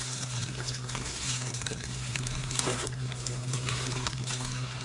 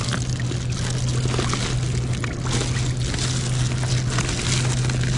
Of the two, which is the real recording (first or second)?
second